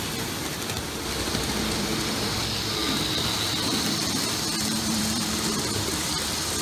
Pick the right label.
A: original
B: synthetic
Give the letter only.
B